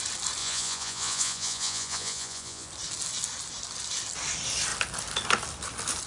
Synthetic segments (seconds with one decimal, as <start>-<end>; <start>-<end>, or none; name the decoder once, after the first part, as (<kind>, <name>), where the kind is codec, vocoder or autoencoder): 0.4-2.7 (vocoder, Vocos)